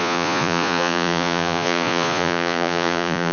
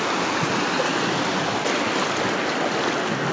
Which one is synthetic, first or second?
first